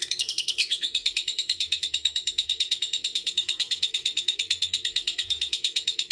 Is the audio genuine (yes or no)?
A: no